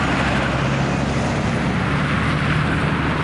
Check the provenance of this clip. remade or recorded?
recorded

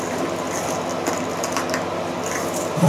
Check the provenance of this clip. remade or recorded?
recorded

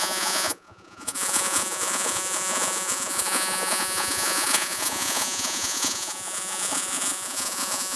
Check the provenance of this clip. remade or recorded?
remade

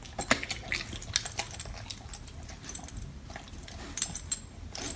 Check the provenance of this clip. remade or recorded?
recorded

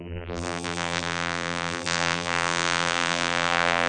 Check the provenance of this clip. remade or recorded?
remade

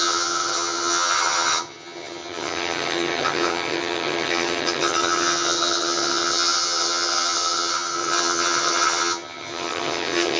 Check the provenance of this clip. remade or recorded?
remade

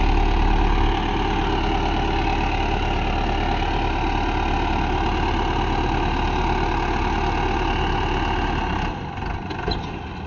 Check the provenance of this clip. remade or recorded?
recorded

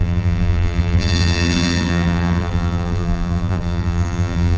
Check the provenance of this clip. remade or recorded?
remade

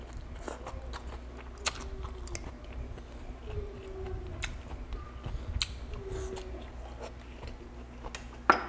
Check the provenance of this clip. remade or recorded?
recorded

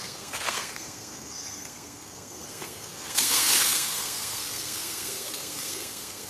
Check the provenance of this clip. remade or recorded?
remade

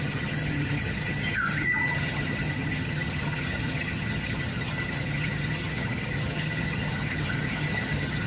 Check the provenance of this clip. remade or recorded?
remade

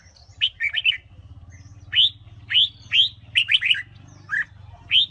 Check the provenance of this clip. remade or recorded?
recorded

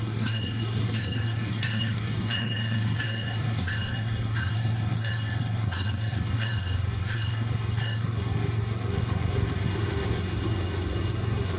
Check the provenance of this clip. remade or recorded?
remade